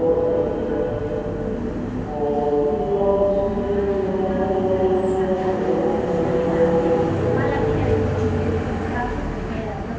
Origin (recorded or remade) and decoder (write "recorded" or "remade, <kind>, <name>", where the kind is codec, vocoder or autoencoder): recorded